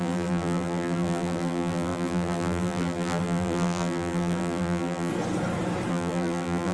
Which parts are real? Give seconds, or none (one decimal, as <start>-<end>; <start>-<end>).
5.1-5.9